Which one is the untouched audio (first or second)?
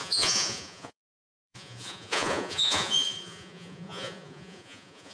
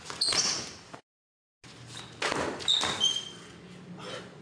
second